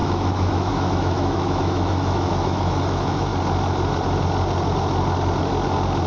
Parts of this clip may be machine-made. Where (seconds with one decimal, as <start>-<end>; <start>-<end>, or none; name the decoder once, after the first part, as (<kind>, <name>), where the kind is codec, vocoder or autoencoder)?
0.0-3.3 (autoencoder, DAC-VAE)